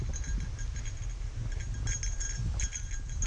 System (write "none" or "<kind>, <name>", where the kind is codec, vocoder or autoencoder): none